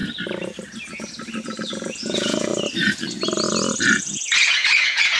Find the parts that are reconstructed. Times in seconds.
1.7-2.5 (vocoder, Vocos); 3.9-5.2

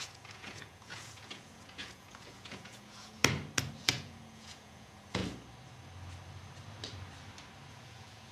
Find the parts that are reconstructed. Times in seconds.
0.0-3.2 (vocoder, Vocos); 3.8-5.2; 7.7-8.3

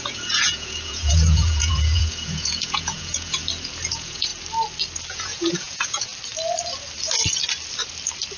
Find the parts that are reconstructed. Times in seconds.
0.0-3.4 (vocoder, Vocos); 3.9-4.3; 5.1-6.1